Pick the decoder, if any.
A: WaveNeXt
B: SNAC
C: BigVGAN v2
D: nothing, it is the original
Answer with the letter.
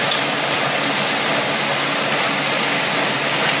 D